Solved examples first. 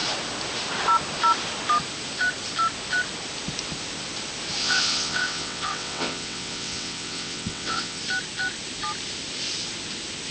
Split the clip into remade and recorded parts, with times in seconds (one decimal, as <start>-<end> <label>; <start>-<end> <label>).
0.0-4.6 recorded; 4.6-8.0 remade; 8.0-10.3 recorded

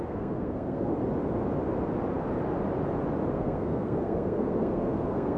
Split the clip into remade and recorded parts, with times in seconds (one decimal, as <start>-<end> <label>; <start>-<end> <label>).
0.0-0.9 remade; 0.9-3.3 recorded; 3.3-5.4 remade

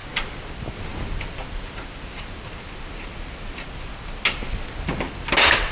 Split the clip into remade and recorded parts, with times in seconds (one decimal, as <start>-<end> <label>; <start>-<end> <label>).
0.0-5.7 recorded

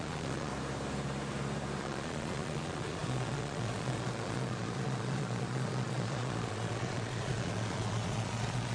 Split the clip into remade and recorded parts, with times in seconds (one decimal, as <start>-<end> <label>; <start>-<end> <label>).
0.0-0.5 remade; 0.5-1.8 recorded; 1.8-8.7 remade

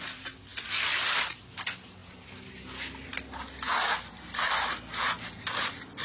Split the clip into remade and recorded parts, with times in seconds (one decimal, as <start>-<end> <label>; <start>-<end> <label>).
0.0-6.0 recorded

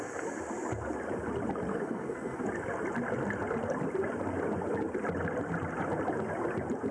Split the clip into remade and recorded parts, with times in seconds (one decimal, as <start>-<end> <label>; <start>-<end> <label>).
0.0-1.7 recorded; 1.7-2.4 remade; 2.4-6.9 recorded

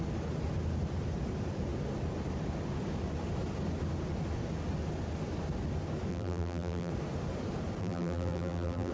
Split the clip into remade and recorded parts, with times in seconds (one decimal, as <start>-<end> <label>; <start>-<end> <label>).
0.0-6.1 recorded; 6.1-6.9 remade; 6.9-7.8 recorded; 7.8-8.9 remade

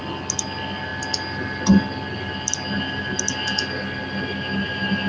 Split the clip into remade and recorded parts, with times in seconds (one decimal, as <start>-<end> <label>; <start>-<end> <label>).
0.0-5.1 recorded